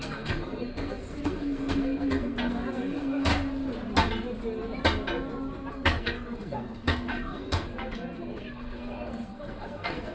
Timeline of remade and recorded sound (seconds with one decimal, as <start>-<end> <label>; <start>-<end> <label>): 0.0-3.3 remade; 3.3-5.7 recorded; 5.7-10.1 remade